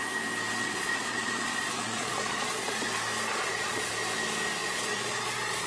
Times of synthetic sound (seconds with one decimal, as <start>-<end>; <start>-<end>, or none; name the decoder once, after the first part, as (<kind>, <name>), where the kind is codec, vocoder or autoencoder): 0.6-2.9 (vocoder, Vocos); 3.3-3.9; 4.6-5.7